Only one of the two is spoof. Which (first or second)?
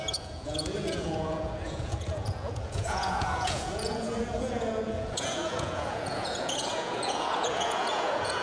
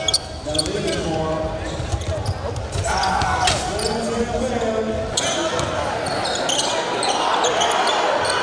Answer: first